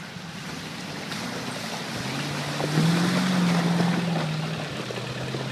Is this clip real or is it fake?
real